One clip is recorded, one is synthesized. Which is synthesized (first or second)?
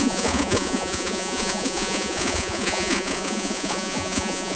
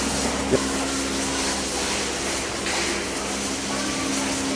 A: first